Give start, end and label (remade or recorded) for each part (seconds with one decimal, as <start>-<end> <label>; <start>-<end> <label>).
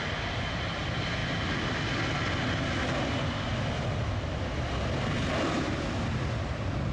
0.0-6.9 recorded